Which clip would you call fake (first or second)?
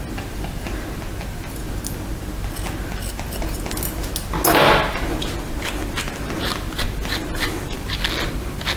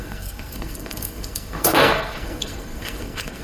second